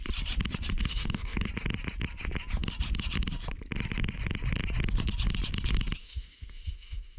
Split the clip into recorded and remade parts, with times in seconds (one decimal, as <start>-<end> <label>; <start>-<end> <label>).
0.0-0.8 recorded; 0.8-1.5 remade; 1.5-6.0 recorded; 6.0-7.2 remade